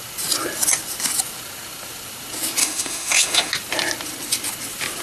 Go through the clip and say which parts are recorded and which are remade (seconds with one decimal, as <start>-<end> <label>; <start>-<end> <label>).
0.0-2.6 recorded; 2.6-3.5 remade; 3.5-5.0 recorded